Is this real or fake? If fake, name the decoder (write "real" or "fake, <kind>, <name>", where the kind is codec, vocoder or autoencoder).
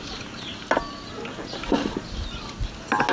real